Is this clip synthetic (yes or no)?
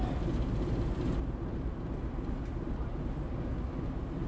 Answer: no